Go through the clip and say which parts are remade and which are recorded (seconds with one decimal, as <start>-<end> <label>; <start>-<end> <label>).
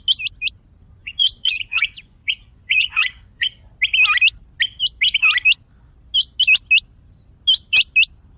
0.0-1.0 recorded; 1.0-3.5 remade; 3.5-8.4 recorded